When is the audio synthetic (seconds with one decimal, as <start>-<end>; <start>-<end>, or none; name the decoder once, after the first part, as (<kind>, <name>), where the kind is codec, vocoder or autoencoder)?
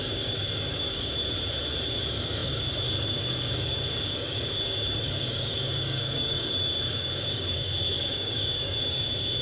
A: 0.0-1.2 (codec, DAC); 2.0-9.4